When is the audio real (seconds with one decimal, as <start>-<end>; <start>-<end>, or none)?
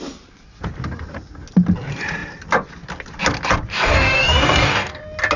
0.0-3.7; 5.0-5.4